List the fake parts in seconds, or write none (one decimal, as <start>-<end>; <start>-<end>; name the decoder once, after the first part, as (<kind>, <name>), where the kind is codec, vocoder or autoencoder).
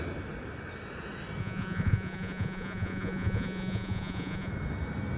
1.4-4.5 (vocoder, Vocos)